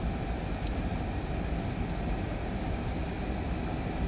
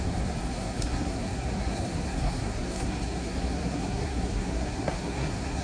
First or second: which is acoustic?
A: first